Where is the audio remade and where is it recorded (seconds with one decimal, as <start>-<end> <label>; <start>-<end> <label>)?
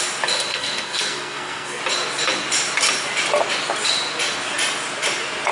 0.0-0.5 recorded; 0.5-1.8 remade; 1.8-5.5 recorded